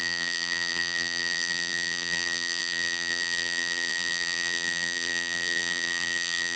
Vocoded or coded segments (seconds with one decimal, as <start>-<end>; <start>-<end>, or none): 0.0-6.6